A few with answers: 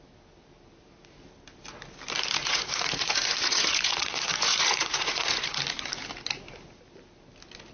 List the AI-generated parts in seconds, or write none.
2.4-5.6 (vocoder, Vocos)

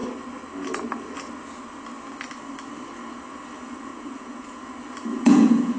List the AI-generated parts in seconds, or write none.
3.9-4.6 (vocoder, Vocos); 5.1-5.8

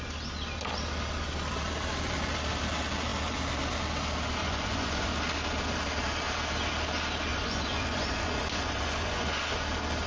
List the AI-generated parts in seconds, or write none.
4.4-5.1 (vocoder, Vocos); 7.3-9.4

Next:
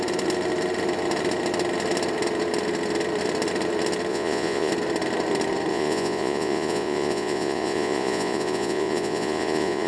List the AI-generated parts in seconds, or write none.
4.1-4.7 (vocoder, Vocos); 5.7-9.9